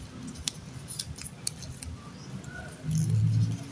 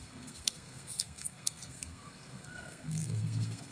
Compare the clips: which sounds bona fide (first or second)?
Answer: first